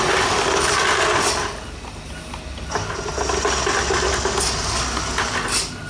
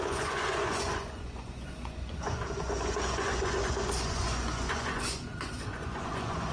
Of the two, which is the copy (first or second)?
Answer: second